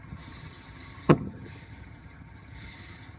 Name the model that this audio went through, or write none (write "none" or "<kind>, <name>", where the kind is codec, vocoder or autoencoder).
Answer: vocoder, HiFi-GAN